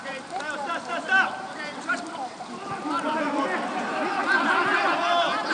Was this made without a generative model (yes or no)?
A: no